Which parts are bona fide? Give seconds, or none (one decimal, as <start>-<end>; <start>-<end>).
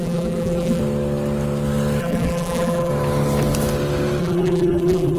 0.8-2.0; 2.9-4.2